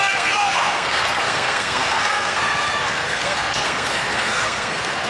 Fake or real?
fake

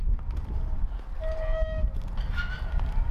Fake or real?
real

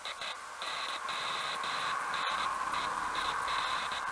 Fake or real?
real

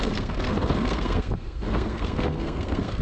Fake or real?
fake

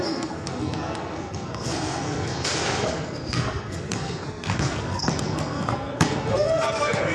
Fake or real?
fake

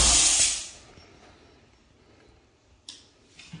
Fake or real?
real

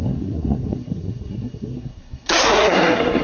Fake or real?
fake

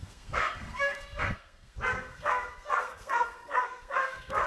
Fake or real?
fake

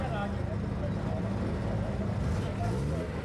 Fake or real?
real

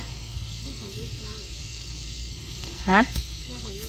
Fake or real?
fake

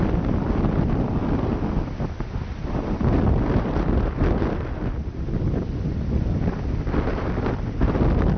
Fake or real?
real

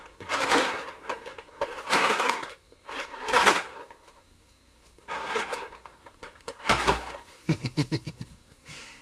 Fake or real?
fake